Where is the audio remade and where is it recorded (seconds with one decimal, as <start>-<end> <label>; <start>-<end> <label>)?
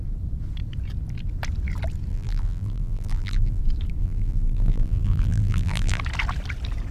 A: 0.0-2.1 recorded; 2.1-3.6 remade; 3.6-4.0 recorded; 4.0-6.0 remade; 6.0-6.9 recorded